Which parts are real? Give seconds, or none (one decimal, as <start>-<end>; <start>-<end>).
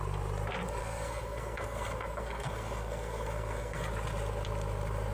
0.0-0.8; 3.9-5.1